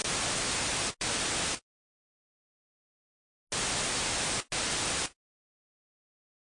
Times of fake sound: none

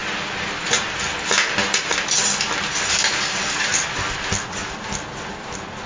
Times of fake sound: none